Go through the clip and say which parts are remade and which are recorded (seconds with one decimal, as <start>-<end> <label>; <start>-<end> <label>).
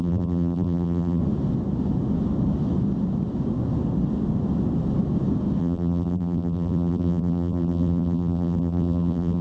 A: 0.0-1.2 remade; 1.2-5.6 recorded; 5.6-9.4 remade